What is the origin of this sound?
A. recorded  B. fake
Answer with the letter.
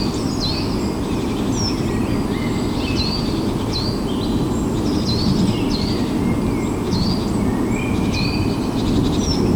A